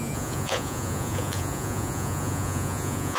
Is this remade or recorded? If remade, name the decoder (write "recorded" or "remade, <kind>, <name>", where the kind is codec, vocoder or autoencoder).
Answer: remade, vocoder, Vocos